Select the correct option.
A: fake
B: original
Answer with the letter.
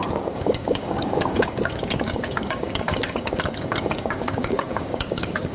A